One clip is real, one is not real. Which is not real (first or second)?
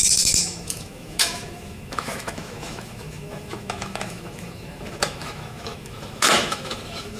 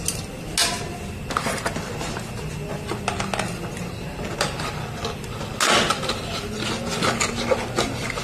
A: first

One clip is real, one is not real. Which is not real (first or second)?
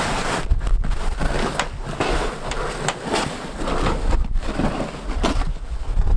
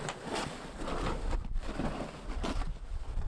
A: second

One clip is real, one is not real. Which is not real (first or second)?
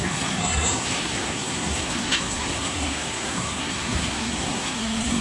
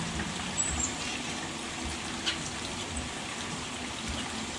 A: first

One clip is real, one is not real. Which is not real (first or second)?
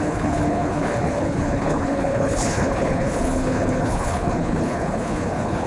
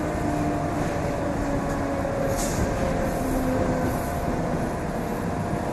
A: first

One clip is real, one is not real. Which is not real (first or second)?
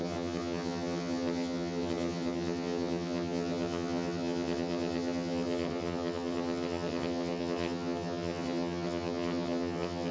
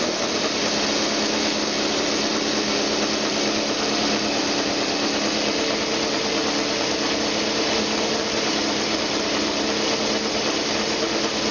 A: first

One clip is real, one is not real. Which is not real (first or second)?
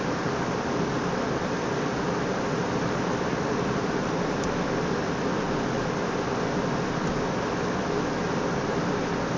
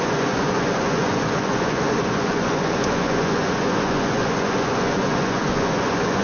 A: second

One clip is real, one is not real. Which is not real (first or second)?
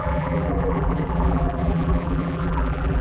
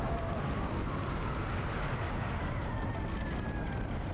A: first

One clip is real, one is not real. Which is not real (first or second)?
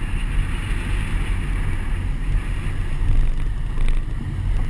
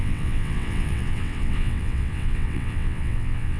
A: second